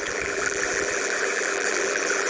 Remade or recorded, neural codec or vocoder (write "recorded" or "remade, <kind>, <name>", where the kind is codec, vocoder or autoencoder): remade, vocoder, BigVGAN v2